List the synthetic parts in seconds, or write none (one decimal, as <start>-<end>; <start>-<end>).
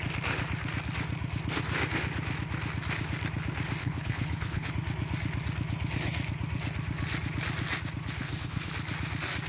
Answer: 3.8-4.7; 8.2-8.7